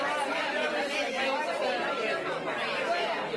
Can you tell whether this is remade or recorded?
recorded